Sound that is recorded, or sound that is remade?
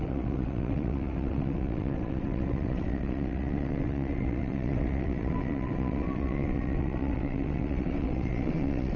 remade